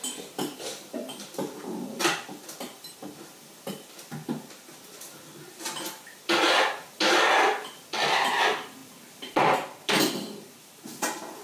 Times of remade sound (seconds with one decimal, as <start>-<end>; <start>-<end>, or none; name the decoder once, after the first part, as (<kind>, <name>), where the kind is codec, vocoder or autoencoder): 8.8-10.8 (vocoder, BigVGAN v2)